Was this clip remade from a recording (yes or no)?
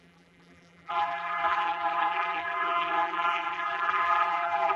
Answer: yes